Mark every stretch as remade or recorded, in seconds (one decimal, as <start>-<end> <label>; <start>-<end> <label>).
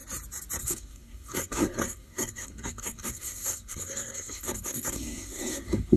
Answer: 0.0-0.6 recorded; 0.6-6.0 remade